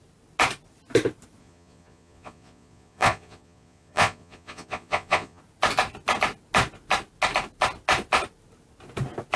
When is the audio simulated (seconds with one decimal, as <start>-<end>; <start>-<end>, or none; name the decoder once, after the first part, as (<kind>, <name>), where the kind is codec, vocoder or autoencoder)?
1.4-5.4 (vocoder, Vocos)

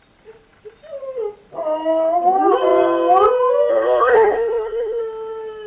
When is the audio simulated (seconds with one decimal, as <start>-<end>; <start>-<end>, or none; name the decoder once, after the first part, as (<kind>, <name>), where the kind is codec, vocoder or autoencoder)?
3.7-5.0 (codec, SNAC)

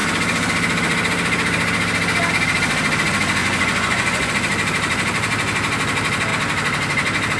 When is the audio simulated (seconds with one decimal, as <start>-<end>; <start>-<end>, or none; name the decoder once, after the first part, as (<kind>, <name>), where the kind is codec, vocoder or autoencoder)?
3.4-4.3 (vocoder, Vocos)